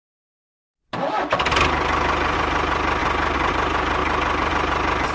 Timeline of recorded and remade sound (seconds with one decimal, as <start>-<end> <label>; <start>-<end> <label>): 0.0-5.1 recorded